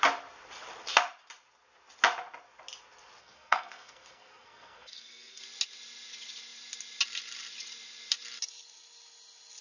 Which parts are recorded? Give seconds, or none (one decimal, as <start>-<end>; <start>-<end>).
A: 0.0-3.2; 5.4-9.6